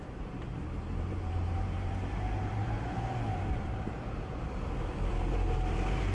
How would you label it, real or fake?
fake